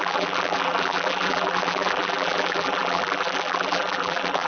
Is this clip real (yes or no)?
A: no